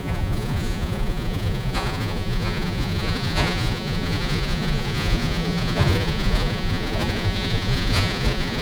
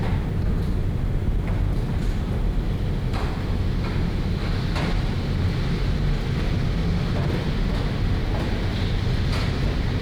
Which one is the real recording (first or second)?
second